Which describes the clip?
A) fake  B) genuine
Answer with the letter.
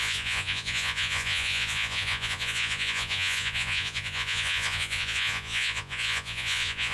A